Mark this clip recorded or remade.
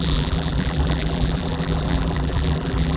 remade